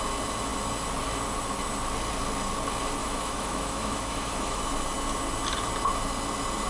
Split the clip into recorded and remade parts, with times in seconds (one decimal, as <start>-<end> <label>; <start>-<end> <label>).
0.0-3.0 recorded; 3.0-4.6 remade; 4.6-6.7 recorded